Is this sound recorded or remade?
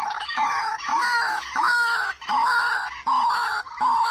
remade